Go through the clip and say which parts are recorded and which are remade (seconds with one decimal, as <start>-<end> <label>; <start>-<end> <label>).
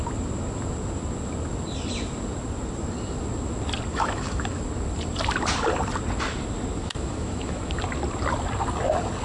0.0-3.9 recorded; 3.9-4.6 remade; 4.6-6.8 recorded; 6.8-7.6 remade; 7.6-9.2 recorded